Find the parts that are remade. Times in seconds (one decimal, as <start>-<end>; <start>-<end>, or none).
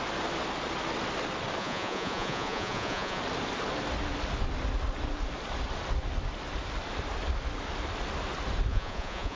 1.6-3.2; 8.7-9.4